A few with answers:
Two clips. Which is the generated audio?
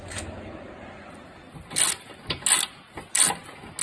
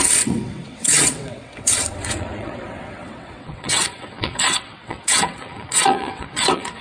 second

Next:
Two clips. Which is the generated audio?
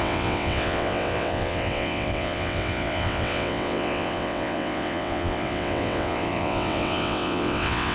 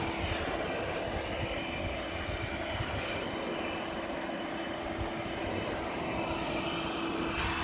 first